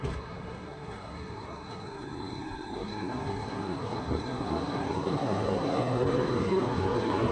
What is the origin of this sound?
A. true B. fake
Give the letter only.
B